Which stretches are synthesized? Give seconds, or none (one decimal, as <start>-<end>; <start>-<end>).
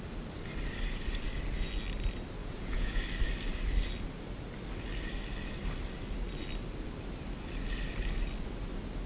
2.4-3.0